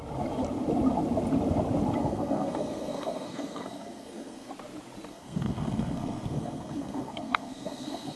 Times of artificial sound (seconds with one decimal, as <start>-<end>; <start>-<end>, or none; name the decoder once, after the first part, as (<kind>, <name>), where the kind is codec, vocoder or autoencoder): 2.0-4.5 (codec, SNAC); 5.1-8.2